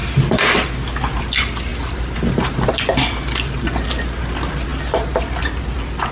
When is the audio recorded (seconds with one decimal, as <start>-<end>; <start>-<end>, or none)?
0.0-1.7; 2.7-6.1